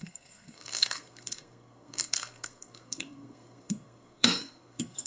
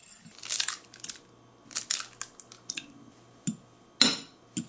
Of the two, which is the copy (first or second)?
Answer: first